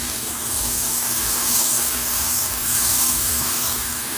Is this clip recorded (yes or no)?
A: no